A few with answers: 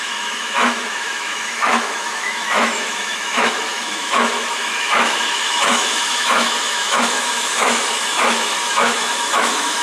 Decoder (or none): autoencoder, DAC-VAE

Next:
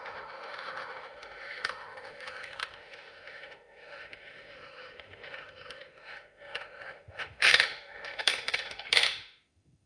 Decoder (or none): autoencoder, DAC-VAE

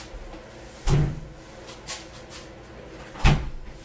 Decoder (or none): none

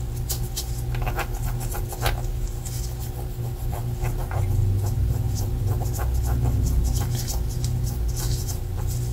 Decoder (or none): none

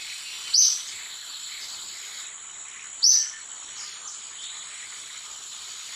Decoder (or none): none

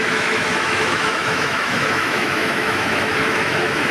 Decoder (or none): autoencoder, DAC-VAE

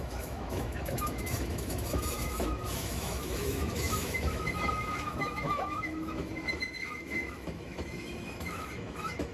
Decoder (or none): autoencoder, DAC-VAE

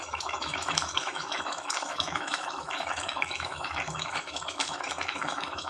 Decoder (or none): autoencoder, DAC-VAE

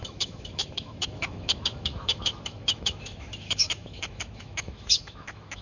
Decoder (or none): autoencoder, DAC-VAE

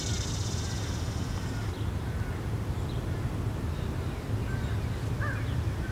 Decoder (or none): none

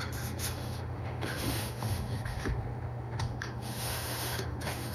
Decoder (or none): autoencoder, DAC-VAE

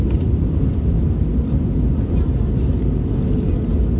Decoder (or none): none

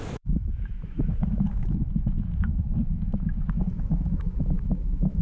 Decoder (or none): autoencoder, DAC-VAE